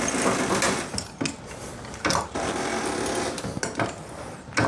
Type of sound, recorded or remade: recorded